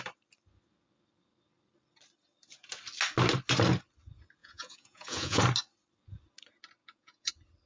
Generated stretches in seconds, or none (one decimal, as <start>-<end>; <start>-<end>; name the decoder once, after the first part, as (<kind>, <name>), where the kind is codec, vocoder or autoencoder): 4.4-5.4 (vocoder, Vocos); 6.8-7.3